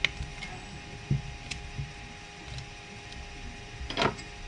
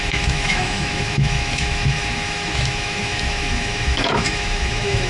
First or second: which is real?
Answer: first